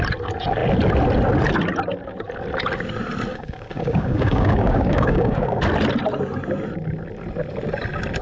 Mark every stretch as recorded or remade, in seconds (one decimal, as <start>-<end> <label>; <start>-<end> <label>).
0.0-3.3 recorded; 3.3-5.6 remade; 5.6-8.2 recorded